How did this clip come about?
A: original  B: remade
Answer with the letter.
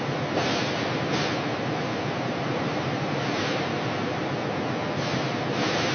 A